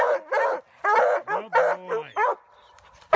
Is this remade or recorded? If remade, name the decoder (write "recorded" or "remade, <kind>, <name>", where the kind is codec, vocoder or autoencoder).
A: recorded